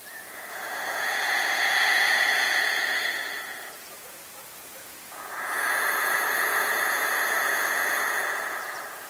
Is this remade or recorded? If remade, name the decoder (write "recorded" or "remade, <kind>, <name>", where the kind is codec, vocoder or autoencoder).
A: remade, vocoder, Vocos